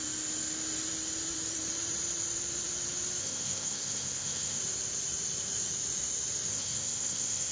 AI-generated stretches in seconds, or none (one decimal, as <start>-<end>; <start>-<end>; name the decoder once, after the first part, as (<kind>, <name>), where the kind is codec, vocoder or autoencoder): 3.2-4.6 (codec, SNAC); 6.5-7.5